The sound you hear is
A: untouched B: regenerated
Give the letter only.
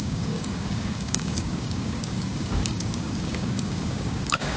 B